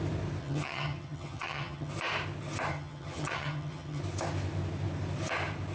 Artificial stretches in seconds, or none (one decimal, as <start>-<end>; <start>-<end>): 0.4-1.9; 2.7-4.0